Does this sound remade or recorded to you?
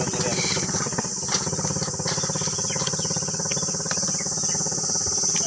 recorded